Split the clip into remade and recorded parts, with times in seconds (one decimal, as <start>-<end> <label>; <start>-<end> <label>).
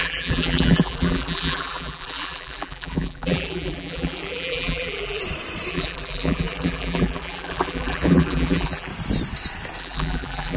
0.0-5.2 remade; 5.2-5.7 recorded; 5.7-8.9 remade; 8.9-9.8 recorded; 9.8-10.6 remade